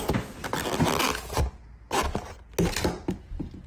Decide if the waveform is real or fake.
real